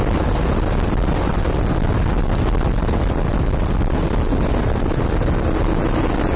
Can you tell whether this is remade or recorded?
recorded